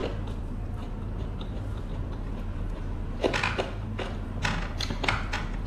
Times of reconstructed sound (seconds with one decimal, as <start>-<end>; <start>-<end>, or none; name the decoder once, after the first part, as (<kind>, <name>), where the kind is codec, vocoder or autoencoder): none